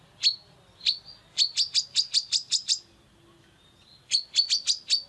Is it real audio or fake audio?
real